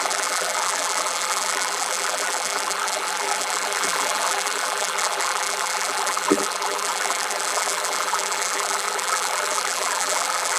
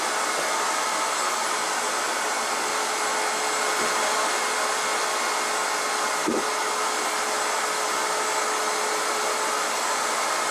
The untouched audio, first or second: second